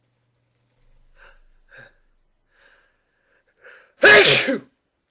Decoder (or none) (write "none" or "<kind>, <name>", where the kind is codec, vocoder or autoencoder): none